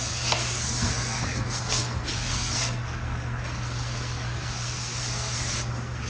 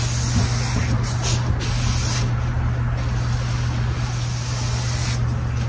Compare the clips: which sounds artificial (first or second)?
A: first